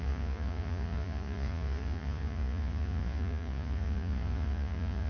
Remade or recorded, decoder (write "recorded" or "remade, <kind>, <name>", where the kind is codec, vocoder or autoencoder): remade, vocoder, Vocos